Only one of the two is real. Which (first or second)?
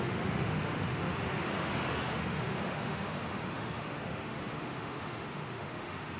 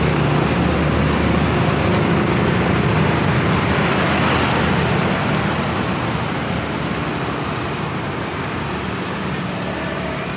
second